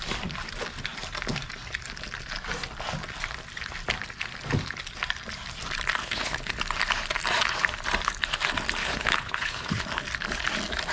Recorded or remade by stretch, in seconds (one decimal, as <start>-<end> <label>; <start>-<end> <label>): 0.0-6.0 recorded; 6.0-6.5 remade; 6.5-8.8 recorded; 8.8-9.8 remade; 9.8-10.9 recorded